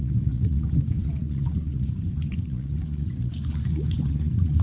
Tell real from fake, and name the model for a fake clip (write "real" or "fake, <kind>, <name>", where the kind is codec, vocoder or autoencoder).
fake, vocoder, Vocos